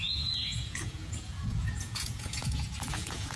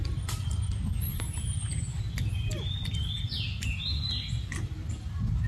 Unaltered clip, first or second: second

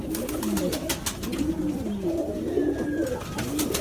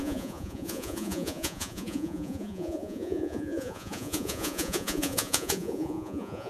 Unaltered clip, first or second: first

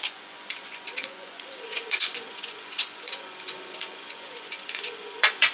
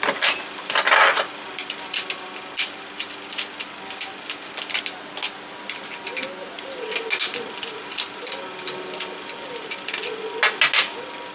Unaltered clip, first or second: second